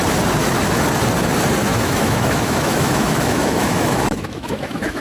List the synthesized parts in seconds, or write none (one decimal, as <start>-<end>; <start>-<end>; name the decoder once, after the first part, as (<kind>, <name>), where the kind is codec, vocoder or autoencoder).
1.7-5.0 (autoencoder, DAC-VAE)